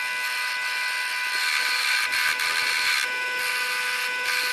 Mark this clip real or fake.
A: real